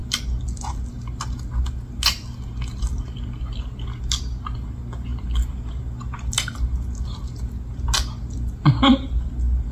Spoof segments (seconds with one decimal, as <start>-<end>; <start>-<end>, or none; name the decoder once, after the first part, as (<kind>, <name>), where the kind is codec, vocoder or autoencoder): none

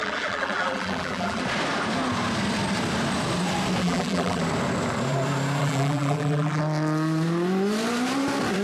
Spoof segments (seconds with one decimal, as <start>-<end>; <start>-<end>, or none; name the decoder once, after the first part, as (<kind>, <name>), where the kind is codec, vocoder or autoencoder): 0.0-1.4 (vocoder, BigVGAN v2); 3.8-4.4; 5.6-6.6

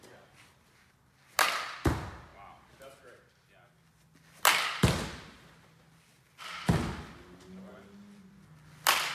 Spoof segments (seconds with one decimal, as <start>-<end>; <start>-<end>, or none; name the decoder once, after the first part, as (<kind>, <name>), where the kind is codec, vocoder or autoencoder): none

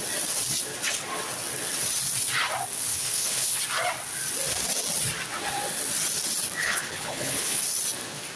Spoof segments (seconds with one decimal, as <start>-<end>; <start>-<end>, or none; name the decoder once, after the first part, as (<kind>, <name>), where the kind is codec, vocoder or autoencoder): 2.9-3.6 (codec, HILCodec); 6.6-7.6